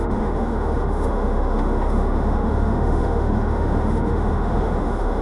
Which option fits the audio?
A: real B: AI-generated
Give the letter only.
B